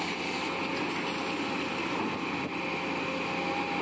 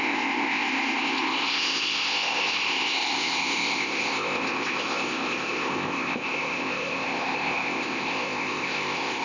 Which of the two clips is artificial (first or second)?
second